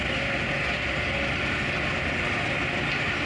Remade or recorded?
recorded